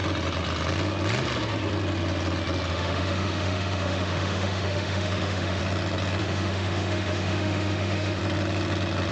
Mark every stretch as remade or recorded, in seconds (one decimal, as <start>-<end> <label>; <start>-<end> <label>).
0.0-2.7 recorded; 2.7-5.6 remade; 5.6-6.2 recorded; 6.2-8.2 remade; 8.2-9.1 recorded